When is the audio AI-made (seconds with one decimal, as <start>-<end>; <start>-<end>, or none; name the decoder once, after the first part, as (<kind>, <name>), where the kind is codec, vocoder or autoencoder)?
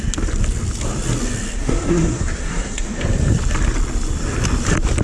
1.6-2.8 (codec, SNAC)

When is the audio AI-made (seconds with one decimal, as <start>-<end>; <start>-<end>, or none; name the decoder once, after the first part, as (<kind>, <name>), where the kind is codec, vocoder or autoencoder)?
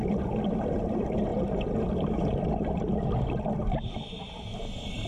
none